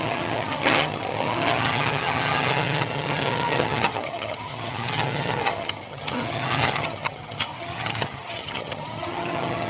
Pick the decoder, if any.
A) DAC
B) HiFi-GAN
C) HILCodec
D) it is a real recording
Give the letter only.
B